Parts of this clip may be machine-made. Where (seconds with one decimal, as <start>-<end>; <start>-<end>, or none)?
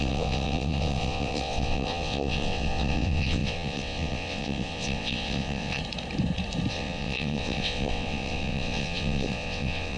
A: 0.0-5.8; 6.7-10.0